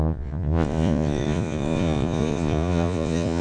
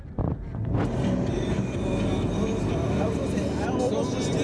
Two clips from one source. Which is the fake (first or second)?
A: first